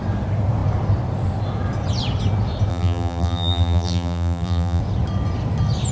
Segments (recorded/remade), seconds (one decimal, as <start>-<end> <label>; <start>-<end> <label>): 0.0-2.7 recorded; 2.7-4.8 remade; 4.8-5.9 recorded